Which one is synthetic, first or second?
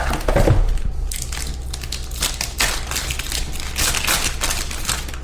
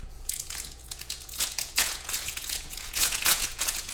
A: second